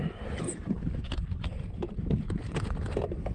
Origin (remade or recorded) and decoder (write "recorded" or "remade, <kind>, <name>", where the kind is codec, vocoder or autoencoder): remade, vocoder, BigVGAN v2